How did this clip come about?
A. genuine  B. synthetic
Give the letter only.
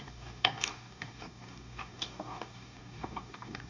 B